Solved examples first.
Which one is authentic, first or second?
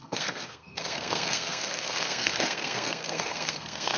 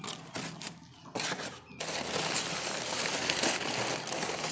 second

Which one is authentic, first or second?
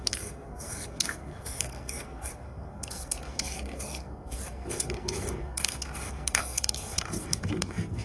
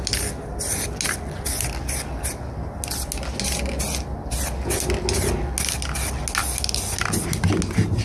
second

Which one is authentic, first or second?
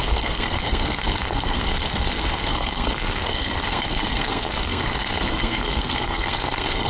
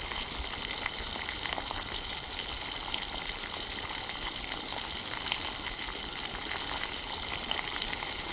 second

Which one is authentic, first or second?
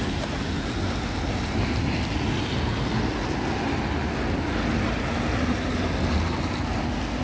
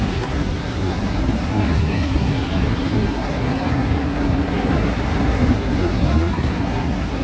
first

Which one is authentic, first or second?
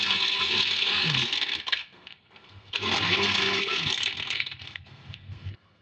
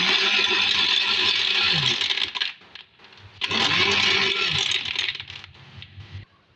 second